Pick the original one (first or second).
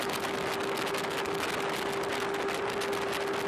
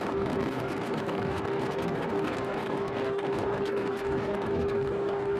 first